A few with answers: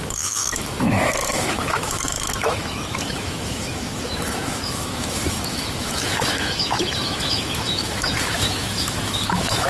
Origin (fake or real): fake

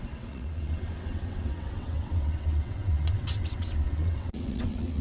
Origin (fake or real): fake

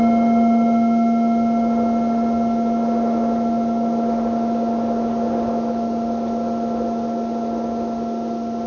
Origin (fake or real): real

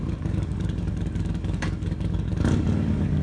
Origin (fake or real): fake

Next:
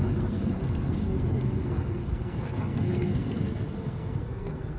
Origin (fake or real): fake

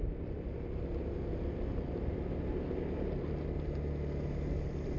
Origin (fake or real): real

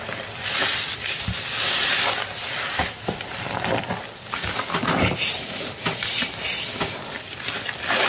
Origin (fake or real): real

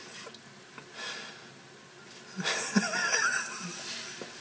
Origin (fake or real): real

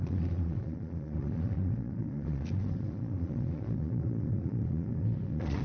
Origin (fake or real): fake